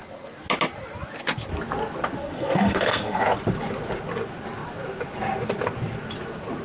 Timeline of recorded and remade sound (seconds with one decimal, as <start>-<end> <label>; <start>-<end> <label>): 0.0-2.2 recorded; 2.2-3.2 remade; 3.2-6.6 recorded

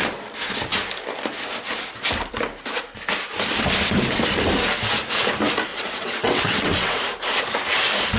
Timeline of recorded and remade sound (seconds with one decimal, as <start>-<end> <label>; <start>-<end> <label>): 0.0-5.7 recorded; 5.7-7.0 remade; 7.0-8.2 recorded

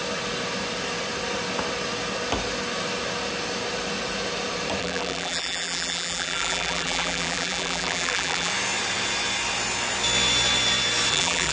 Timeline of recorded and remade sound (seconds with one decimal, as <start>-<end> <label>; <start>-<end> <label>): 0.0-4.8 recorded; 4.8-8.5 remade; 8.5-11.1 recorded; 11.1-11.5 remade

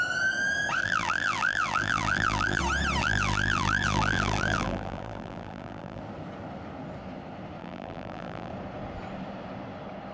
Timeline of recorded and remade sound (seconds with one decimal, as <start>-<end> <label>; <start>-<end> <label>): 0.0-0.8 recorded; 0.8-2.6 remade; 2.6-3.0 recorded; 3.0-6.0 remade; 6.0-7.6 recorded; 7.6-8.5 remade; 8.5-10.1 recorded